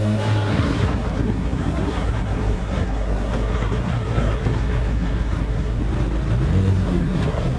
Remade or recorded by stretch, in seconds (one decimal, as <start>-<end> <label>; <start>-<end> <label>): 0.0-5.8 remade; 5.8-6.7 recorded; 6.7-7.6 remade